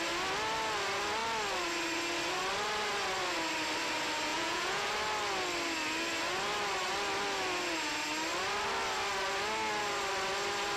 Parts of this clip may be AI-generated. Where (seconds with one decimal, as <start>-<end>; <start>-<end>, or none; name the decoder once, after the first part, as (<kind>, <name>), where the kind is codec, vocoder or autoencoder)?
4.3-4.9 (vocoder, Vocos)